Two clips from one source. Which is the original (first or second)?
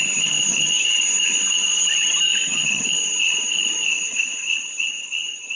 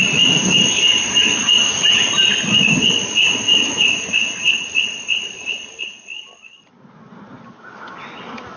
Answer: second